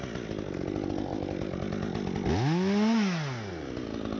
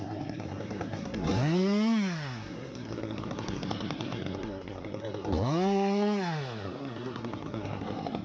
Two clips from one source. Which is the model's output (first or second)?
second